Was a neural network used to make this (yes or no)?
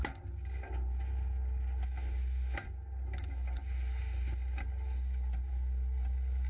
no